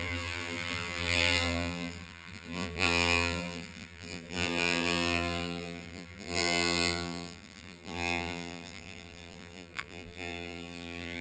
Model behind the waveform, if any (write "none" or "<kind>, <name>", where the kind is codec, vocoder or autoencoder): vocoder, BigVGAN v2